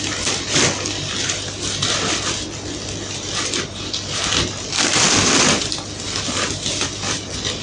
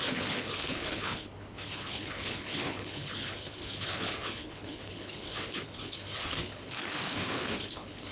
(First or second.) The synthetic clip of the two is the second